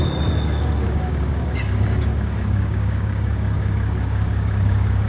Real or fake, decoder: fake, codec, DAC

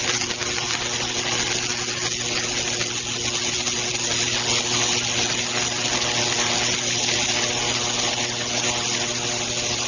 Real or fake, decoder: real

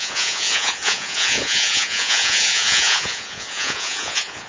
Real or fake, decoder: fake, vocoder, Vocos